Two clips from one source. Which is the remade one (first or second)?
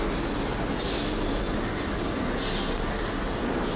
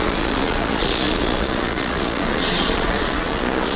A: second